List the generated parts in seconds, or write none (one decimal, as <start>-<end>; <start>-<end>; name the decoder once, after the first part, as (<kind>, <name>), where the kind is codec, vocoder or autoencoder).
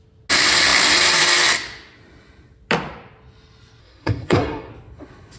3.8-4.7 (codec, SNAC)